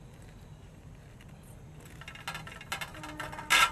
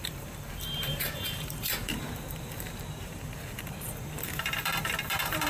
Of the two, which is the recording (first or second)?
first